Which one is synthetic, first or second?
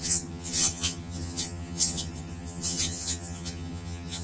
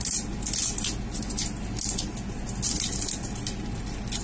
first